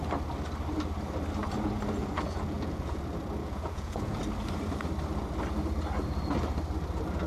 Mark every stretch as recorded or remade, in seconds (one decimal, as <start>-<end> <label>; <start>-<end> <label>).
0.0-2.0 recorded; 2.0-3.0 remade; 3.0-3.4 recorded; 3.4-4.2 remade; 4.2-7.3 recorded